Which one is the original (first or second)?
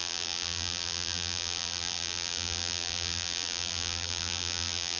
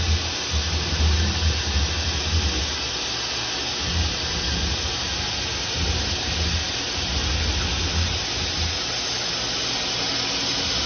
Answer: second